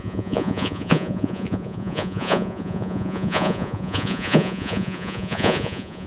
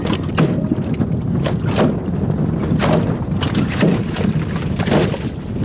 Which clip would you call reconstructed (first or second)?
first